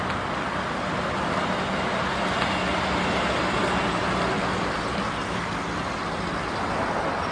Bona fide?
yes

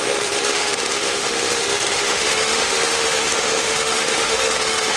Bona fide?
no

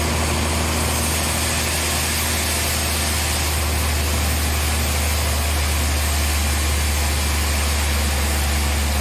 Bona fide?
yes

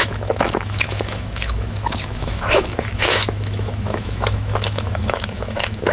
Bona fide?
no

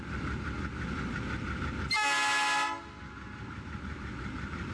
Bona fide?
yes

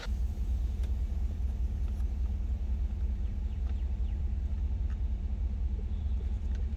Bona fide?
no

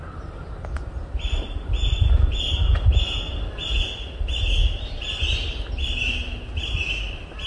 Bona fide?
yes